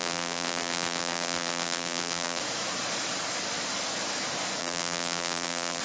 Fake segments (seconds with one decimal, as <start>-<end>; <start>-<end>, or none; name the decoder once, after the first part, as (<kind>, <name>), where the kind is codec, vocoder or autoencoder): 0.0-2.4 (vocoder, BigVGAN v2); 4.6-5.8